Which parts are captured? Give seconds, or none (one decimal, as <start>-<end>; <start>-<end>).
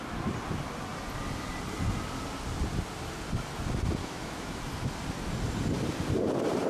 0.0-4.0; 4.6-6.7